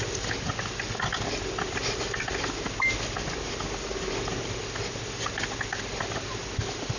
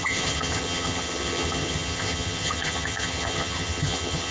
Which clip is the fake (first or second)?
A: second